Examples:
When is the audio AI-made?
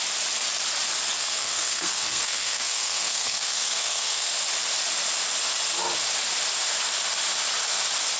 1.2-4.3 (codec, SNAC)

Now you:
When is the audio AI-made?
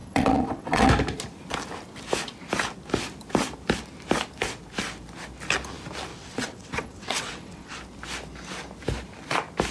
0.0-0.9 (vocoder, WaveNeXt); 6.1-7.8